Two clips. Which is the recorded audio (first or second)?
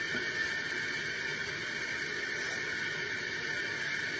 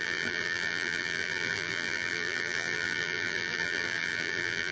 first